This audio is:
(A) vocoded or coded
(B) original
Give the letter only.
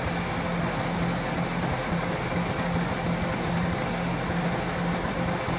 B